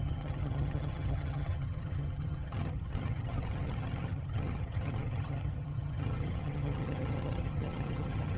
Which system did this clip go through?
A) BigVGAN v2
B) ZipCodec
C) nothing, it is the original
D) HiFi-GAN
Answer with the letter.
D